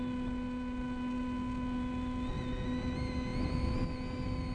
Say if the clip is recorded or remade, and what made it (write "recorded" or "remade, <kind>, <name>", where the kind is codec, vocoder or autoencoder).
recorded